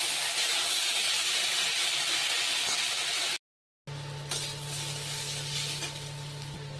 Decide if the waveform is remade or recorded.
recorded